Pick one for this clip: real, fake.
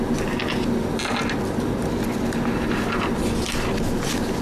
real